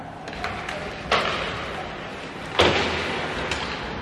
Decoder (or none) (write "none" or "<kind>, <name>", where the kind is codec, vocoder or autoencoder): none